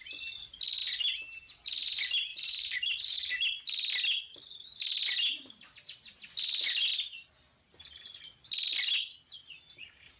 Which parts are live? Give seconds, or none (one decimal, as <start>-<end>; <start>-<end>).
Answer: 0.0-2.3; 3.3-10.2